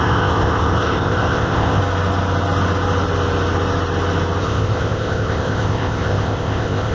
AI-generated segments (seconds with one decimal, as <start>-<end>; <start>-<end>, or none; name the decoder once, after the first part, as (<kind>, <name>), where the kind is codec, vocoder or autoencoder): 0.0-1.8 (codec, ZipCodec); 4.4-6.9